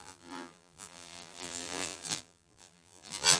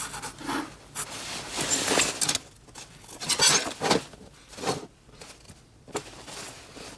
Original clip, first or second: second